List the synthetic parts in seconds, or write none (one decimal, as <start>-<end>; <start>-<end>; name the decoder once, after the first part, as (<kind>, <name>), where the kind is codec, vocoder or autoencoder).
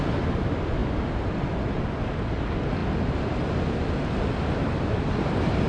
none